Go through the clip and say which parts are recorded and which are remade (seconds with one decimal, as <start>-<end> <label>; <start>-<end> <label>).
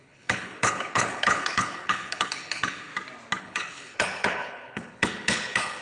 0.0-2.9 remade; 2.9-3.4 recorded; 3.4-5.8 remade